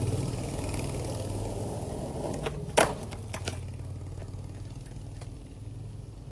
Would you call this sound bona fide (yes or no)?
yes